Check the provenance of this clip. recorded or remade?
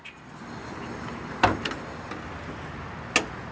recorded